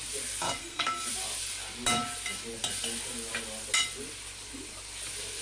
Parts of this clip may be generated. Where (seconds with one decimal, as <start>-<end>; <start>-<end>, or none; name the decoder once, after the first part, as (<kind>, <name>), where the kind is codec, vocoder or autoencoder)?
0.6-1.1 (codec, SNAC)